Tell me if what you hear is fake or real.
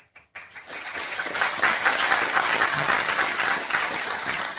fake